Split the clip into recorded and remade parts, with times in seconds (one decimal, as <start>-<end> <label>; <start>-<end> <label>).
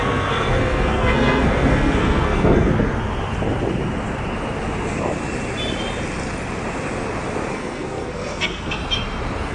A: 0.0-2.7 remade; 2.7-7.5 recorded; 7.5-8.8 remade; 8.8-9.5 recorded